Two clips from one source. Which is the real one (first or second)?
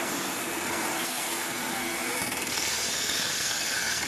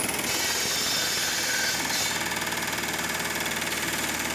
second